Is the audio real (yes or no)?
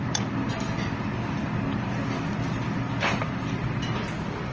yes